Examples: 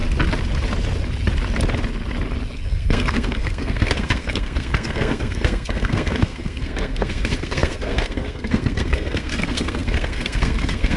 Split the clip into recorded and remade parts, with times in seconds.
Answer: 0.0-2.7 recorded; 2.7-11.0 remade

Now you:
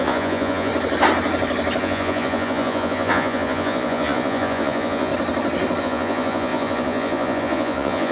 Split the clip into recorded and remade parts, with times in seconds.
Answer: 0.0-0.7 remade; 0.7-1.8 recorded; 1.8-5.1 remade; 5.1-5.8 recorded; 5.8-8.1 remade

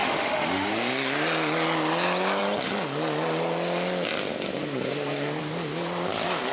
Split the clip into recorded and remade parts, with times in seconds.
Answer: 0.0-0.7 remade; 0.7-6.5 recorded

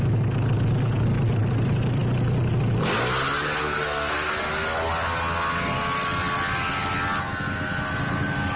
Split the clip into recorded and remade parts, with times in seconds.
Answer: 0.0-3.6 recorded; 3.6-4.3 remade; 4.3-8.6 recorded